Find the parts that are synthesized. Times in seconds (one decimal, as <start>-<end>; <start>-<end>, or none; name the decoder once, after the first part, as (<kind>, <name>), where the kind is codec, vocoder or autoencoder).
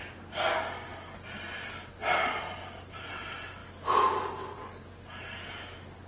none